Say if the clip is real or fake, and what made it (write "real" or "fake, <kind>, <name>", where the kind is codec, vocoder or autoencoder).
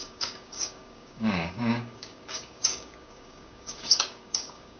fake, codec, DAC